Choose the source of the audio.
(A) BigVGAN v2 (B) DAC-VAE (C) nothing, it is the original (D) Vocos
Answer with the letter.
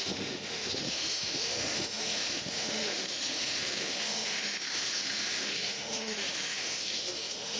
B